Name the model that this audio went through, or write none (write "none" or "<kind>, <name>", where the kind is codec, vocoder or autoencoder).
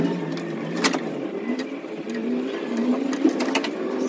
none